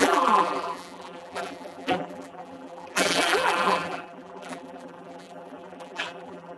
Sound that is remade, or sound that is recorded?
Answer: remade